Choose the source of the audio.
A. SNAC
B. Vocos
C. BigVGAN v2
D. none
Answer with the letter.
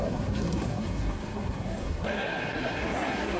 A